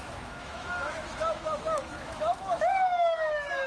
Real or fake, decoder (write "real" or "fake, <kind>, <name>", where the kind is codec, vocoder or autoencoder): fake, autoencoder, DAC-VAE